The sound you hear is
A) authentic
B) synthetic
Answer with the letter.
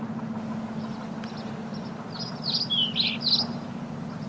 A